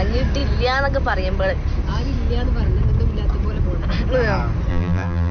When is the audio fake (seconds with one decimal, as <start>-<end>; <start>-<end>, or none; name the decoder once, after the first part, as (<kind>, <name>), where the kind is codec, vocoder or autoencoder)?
4.7-5.3 (vocoder, BigVGAN v2)